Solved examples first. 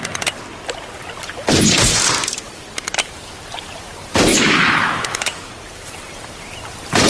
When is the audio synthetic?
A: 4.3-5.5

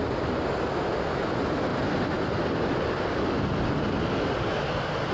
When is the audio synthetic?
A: none